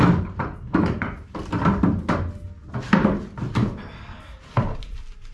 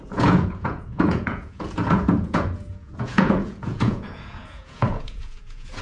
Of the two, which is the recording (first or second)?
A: first